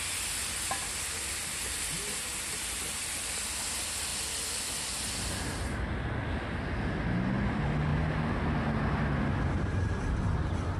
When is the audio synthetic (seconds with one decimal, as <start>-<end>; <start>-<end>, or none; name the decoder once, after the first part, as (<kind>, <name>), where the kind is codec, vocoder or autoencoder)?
none